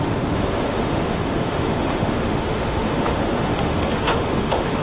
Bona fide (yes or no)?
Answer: no